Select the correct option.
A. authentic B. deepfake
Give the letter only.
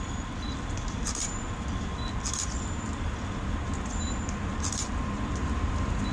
A